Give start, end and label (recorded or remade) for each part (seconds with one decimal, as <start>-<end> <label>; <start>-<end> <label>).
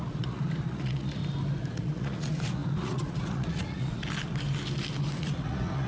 0.0-1.2 remade; 1.2-1.7 recorded; 1.7-4.0 remade; 4.0-5.2 recorded; 5.2-5.9 remade